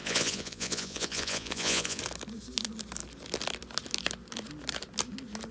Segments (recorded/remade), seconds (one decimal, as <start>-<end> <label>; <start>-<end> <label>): 0.0-2.0 remade; 2.0-5.5 recorded